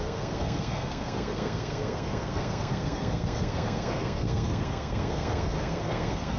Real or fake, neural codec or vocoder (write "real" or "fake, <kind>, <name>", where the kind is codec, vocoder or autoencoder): fake, codec, SNAC